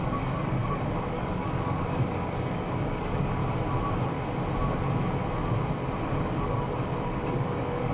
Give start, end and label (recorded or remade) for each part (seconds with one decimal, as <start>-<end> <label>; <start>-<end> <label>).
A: 0.0-3.4 remade; 3.4-6.2 recorded; 6.2-7.9 remade